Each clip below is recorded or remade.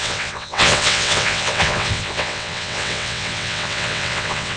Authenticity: remade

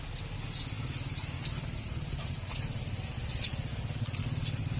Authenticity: recorded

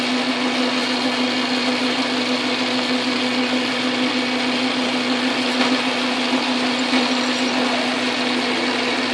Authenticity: recorded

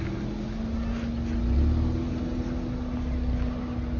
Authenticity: recorded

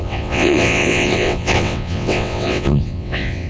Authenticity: remade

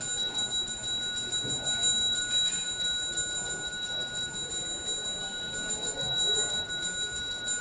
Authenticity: recorded